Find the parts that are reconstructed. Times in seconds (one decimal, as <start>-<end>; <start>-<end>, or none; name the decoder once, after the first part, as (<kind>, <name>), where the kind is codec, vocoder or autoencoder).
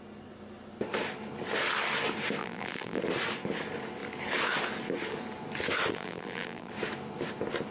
2.4-3.0 (vocoder, BigVGAN v2); 5.9-6.7